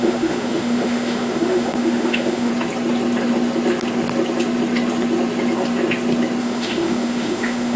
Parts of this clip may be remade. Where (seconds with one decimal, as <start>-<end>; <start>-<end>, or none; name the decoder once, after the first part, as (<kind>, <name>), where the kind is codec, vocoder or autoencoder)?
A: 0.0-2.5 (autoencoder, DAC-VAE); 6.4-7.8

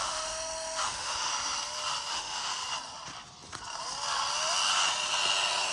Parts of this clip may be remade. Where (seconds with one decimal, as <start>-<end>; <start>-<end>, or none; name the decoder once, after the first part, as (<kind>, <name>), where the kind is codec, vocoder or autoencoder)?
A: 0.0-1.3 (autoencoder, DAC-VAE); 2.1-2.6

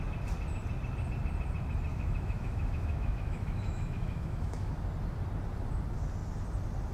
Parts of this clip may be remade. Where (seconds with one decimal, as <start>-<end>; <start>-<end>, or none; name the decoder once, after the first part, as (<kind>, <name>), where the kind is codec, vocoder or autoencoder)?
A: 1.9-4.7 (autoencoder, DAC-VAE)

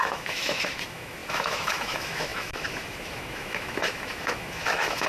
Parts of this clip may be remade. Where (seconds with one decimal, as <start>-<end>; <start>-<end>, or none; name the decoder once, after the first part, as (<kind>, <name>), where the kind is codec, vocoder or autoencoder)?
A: 0.0-5.1 (autoencoder, DAC-VAE)

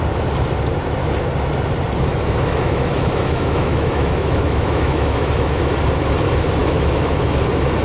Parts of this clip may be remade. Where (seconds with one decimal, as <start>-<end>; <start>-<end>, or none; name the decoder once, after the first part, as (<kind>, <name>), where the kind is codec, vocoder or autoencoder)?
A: 2.1-5.6 (autoencoder, DAC-VAE); 6.6-7.1